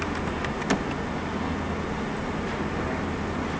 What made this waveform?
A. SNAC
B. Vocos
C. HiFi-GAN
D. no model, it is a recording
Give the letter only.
D